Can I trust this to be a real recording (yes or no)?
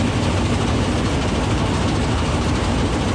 yes